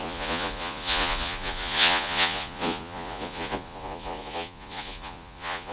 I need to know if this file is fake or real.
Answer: fake